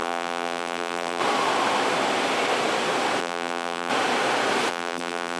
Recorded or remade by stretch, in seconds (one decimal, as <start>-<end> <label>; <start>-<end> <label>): 0.0-1.2 remade; 1.2-3.2 recorded; 3.2-3.9 remade; 3.9-4.7 recorded; 4.7-5.4 remade

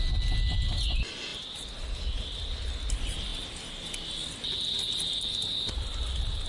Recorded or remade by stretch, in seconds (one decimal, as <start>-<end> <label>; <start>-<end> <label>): 0.0-6.5 recorded

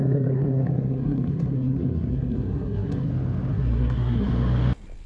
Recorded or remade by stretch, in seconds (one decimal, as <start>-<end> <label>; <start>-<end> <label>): 0.0-3.1 remade; 3.1-3.5 recorded; 3.5-4.3 remade; 4.3-5.1 recorded

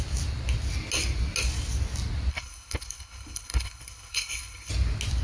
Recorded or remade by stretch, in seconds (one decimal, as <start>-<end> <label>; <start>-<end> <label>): 0.0-2.3 recorded; 2.3-4.7 remade; 4.7-5.2 recorded

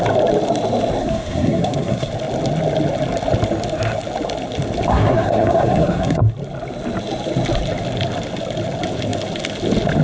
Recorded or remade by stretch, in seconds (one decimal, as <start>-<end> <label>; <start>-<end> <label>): 0.0-1.0 recorded; 1.0-2.1 remade; 2.1-4.9 recorded; 4.9-6.3 remade; 6.3-10.0 recorded

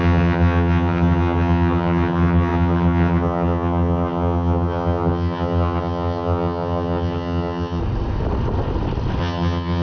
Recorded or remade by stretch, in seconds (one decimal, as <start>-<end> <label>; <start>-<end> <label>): 0.0-7.8 remade; 7.8-9.2 recorded; 9.2-9.8 remade